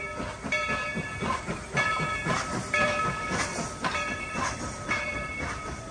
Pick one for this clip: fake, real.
fake